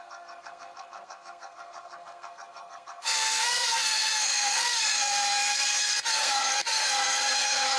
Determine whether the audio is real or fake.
fake